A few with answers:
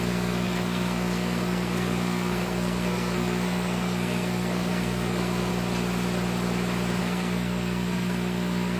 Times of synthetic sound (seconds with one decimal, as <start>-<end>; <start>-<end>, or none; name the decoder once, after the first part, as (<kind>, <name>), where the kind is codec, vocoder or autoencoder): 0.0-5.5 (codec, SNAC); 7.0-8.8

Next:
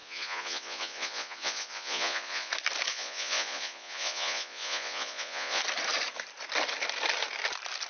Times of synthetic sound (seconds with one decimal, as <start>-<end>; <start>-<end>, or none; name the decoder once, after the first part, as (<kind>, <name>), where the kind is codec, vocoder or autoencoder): 0.0-2.5 (vocoder, Vocos); 2.9-5.6

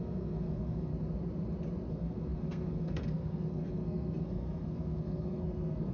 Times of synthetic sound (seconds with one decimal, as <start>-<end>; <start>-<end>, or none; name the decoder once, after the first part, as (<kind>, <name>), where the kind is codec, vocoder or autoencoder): 0.0-0.9 (codec, SNAC); 1.9-5.9

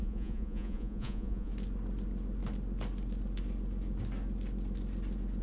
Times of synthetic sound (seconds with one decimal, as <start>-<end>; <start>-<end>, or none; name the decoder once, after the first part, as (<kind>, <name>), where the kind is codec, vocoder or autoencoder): 0.0-1.5 (vocoder, Vocos)